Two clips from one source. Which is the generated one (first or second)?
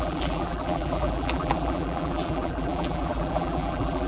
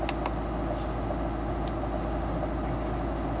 first